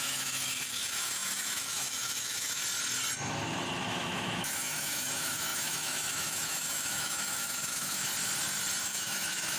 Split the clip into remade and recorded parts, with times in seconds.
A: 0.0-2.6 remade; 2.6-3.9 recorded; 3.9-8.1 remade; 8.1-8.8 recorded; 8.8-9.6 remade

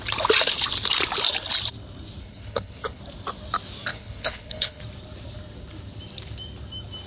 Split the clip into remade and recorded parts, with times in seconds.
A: 0.0-2.2 recorded; 2.2-3.0 remade; 3.0-3.9 recorded; 3.9-4.8 remade; 4.8-7.1 recorded

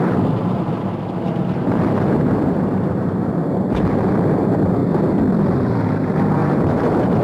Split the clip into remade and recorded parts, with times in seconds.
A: 0.0-4.8 remade; 4.8-5.3 recorded; 5.3-7.2 remade

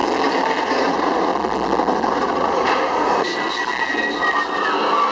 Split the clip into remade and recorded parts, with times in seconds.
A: 0.0-0.6 recorded; 0.6-1.3 remade; 1.3-2.1 recorded; 2.1-3.3 remade; 3.3-5.1 recorded

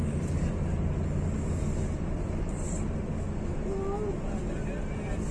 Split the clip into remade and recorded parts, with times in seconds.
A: 0.0-5.3 recorded

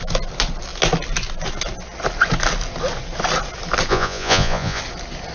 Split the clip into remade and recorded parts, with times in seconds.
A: 0.0-3.9 recorded; 3.9-4.8 remade; 4.8-5.3 recorded

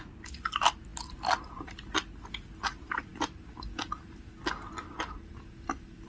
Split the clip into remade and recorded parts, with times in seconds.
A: 0.0-6.1 recorded